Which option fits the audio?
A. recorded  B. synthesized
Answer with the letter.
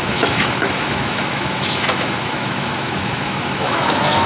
B